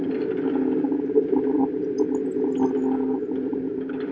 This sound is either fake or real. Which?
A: real